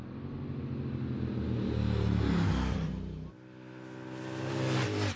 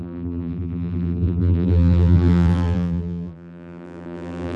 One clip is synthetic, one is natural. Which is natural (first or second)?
first